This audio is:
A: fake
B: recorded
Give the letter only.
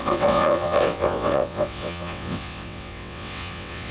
A